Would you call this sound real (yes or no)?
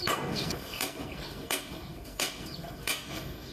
no